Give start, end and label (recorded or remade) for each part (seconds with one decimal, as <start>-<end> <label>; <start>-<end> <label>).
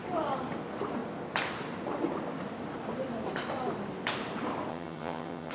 0.0-4.7 recorded; 4.7-5.5 remade